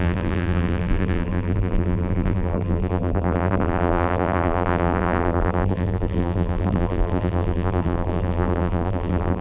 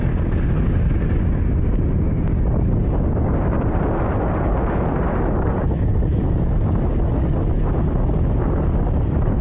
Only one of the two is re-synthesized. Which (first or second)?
first